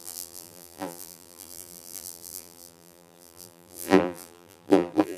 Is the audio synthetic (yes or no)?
yes